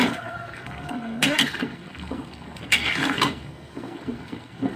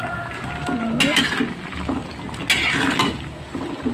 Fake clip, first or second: first